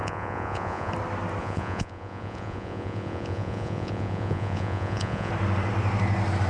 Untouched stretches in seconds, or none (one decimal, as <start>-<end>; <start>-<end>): 0.9-1.4; 5.3-6.5